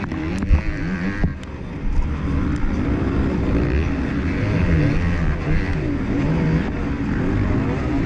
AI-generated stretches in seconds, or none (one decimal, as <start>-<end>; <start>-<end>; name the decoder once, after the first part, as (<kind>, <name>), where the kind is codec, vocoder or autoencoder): none